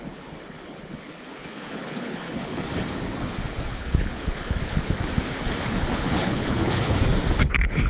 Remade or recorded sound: remade